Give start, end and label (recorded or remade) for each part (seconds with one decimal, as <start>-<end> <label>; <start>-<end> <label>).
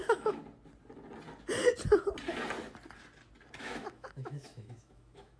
0.0-0.4 remade; 0.4-3.6 recorded; 3.6-5.4 remade